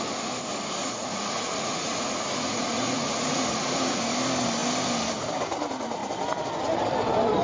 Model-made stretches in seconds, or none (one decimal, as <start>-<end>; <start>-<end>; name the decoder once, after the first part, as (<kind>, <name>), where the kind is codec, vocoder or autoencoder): 0.8-4.0 (vocoder, Vocos)

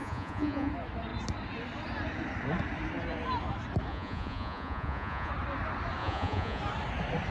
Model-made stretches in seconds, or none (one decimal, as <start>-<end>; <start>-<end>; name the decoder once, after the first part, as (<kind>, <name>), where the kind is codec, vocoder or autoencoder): 0.0-0.7 (vocoder, Vocos); 3.9-5.3; 6.0-6.6

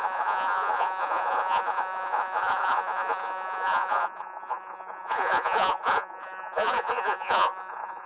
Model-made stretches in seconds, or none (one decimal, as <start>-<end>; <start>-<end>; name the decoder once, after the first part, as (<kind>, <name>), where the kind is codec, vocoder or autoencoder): 0.0-8.1 (vocoder, Vocos)

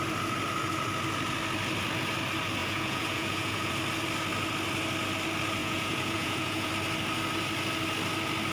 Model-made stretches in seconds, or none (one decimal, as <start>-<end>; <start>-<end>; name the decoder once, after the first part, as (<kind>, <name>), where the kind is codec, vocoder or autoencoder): 2.6-3.7 (vocoder, Vocos); 5.6-6.7